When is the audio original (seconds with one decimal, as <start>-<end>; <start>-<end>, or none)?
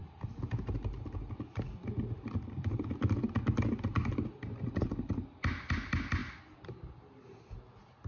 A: 0.0-8.1